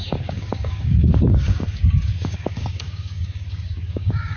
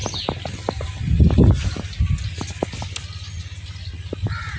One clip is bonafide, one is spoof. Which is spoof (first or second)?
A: first